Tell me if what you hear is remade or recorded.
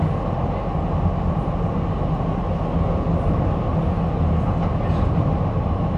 recorded